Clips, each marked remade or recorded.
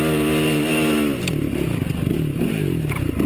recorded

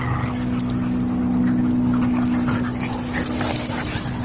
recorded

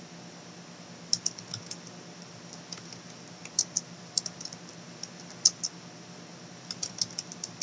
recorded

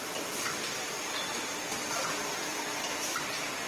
remade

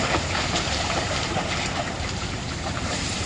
remade